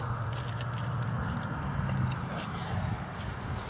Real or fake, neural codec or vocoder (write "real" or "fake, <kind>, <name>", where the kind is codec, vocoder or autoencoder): real